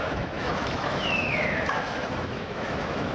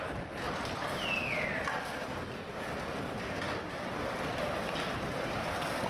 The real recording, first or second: second